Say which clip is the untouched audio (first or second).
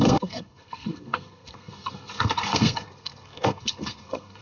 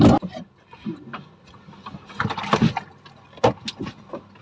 second